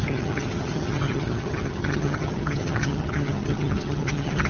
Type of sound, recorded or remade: remade